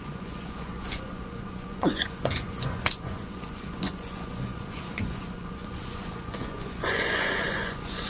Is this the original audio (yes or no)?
no